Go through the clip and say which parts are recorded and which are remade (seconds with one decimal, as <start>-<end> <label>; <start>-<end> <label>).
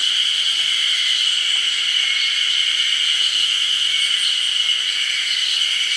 0.0-3.3 recorded; 3.3-4.0 remade; 4.0-6.0 recorded